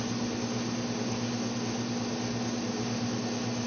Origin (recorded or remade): recorded